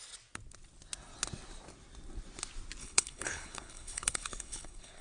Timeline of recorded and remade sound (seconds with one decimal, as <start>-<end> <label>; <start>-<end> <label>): 0.0-2.8 recorded; 2.8-5.0 remade